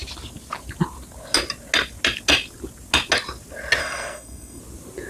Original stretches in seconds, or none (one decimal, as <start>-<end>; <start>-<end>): 0.0-3.8; 4.6-5.1